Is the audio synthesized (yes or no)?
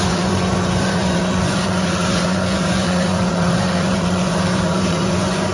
yes